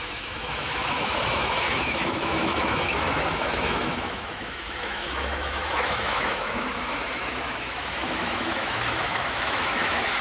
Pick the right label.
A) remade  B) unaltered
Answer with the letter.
A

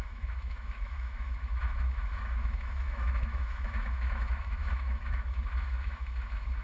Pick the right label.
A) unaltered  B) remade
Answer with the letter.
B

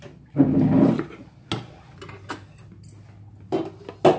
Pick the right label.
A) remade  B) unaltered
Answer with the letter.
B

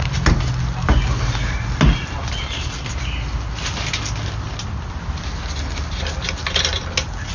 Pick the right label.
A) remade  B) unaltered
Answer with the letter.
B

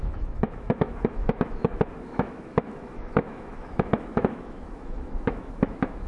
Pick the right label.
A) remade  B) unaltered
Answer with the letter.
A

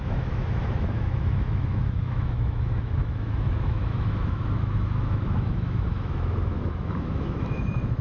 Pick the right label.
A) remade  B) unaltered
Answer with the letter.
A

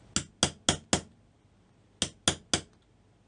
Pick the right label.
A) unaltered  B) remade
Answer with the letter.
A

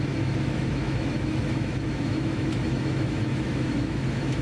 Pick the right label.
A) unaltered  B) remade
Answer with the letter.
B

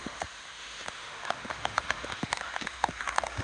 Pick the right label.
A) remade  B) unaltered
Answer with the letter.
A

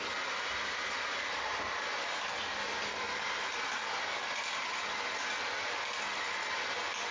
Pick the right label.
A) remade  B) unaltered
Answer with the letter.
B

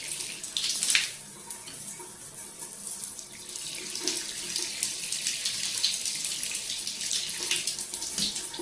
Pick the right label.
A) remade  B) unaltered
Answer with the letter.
B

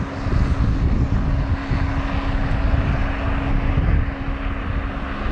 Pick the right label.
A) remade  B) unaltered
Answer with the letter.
B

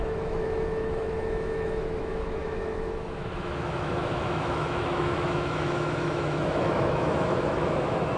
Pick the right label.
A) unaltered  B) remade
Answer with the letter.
B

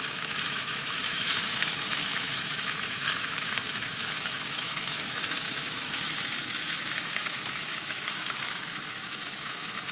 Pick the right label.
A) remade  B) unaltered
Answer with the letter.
A